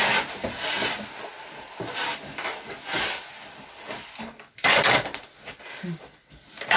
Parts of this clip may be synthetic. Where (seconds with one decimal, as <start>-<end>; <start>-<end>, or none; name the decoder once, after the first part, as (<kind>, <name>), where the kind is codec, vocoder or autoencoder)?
none

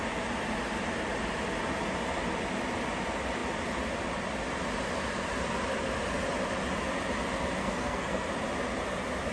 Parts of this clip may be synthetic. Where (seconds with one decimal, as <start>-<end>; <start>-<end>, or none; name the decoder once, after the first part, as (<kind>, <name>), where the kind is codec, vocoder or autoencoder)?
7.6-8.3 (codec, SNAC)

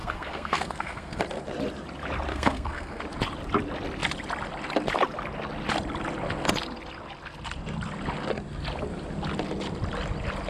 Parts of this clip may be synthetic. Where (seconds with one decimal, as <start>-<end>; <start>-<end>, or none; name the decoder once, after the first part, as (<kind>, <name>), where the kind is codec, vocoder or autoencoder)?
0.0-1.2 (codec, SNAC); 2.3-3.0

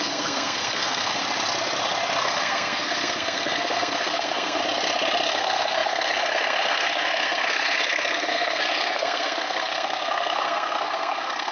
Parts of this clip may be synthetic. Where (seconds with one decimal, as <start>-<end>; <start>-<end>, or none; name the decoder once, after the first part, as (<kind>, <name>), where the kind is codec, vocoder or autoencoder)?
0.0-1.2 (codec, SNAC); 2.2-4.6; 5.3-11.5

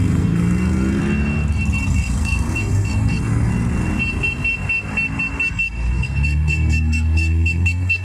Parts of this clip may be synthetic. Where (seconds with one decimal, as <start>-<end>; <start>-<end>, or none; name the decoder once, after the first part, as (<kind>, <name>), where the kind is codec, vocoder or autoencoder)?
0.0-1.0 (codec, SNAC); 1.9-3.5; 5.5-8.0

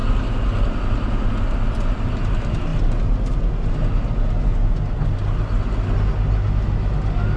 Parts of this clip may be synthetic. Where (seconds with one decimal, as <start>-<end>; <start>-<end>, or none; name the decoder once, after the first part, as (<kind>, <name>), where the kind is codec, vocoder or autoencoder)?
none